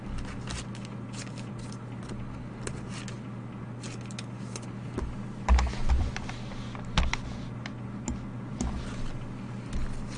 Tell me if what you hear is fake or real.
real